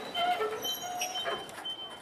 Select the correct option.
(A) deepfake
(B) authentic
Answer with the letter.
B